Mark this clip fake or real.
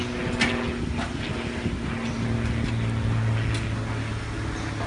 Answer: real